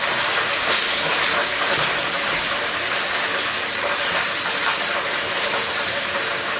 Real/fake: fake